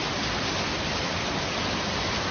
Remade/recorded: recorded